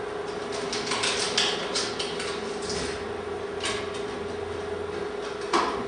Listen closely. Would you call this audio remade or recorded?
recorded